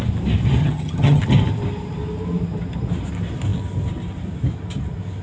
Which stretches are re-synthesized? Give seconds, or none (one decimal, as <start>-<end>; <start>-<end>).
0.6-1.2